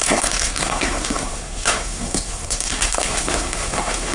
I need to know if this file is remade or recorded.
remade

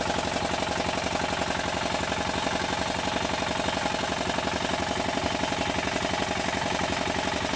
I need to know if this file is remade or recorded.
recorded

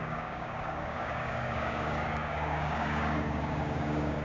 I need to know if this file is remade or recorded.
remade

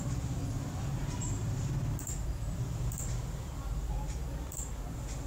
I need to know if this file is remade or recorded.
remade